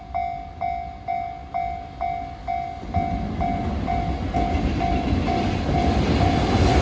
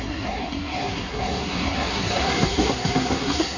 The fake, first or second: second